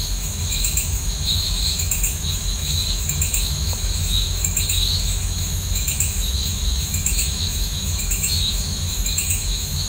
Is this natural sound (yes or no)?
no